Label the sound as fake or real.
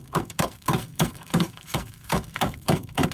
fake